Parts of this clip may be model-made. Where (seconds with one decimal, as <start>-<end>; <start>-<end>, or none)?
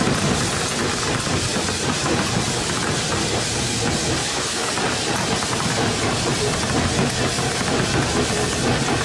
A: 4.2-4.7